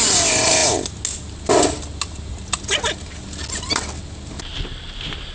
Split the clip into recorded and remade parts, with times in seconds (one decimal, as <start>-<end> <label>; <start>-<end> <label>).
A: 0.0-5.3 recorded